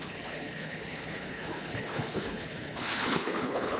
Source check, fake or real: fake